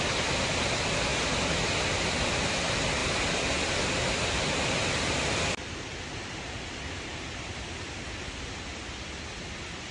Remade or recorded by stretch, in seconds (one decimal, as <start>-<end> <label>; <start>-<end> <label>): 0.0-9.9 recorded